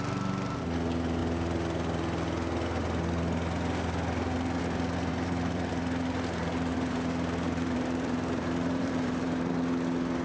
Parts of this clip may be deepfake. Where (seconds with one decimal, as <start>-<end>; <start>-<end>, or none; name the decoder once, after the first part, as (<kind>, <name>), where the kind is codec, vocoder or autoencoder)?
5.1-5.7 (vocoder, BigVGAN v2); 6.7-9.5